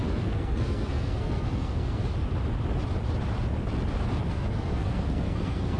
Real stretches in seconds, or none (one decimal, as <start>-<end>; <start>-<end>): 2.0-4.3